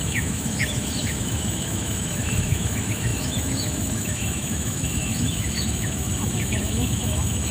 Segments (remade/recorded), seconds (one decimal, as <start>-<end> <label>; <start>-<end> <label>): 0.0-7.5 remade